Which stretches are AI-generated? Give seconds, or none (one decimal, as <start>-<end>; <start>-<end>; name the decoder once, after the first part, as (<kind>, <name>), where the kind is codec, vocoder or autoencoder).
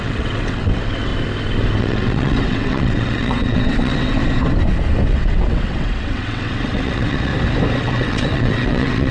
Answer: 0.0-1.1 (vocoder, WaveNeXt); 1.8-4.2; 5.1-7.3; 7.8-9.1